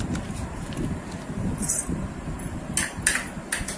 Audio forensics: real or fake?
real